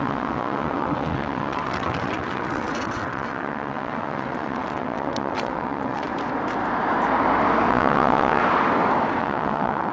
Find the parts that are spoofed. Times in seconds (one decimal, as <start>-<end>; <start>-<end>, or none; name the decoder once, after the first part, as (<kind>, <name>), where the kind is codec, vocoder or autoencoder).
0.0-6.1 (vocoder, WaveNeXt); 7.7-8.4; 9.2-9.9